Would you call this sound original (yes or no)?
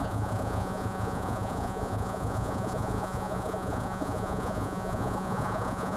no